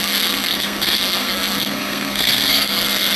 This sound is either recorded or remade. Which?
remade